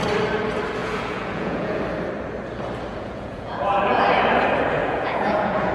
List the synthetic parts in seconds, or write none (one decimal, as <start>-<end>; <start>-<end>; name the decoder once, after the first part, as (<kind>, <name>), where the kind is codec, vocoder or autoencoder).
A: 0.8-1.8 (vocoder, Vocos); 2.9-4.0; 4.8-5.7